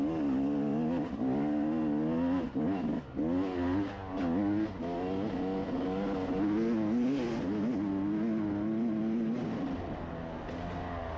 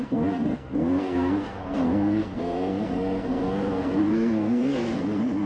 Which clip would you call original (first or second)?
first